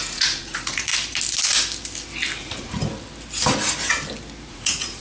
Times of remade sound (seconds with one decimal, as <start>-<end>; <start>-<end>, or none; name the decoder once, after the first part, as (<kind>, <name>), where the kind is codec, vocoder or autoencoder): 0.0-0.9 (vocoder, Vocos); 2.4-2.8; 4.5-5.0